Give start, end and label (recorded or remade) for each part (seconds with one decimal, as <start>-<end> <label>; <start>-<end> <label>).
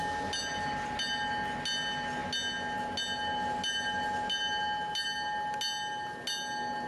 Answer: 0.0-6.9 recorded